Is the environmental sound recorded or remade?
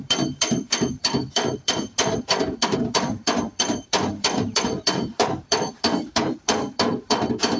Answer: remade